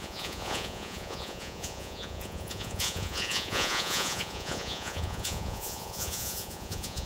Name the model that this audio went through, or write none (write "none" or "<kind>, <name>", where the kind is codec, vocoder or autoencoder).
vocoder, Vocos